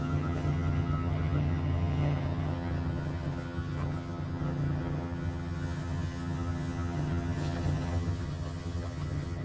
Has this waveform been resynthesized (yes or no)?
yes